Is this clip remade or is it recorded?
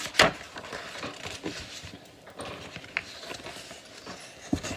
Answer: recorded